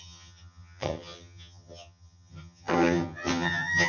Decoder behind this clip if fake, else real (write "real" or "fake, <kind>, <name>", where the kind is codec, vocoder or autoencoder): fake, vocoder, HiFi-GAN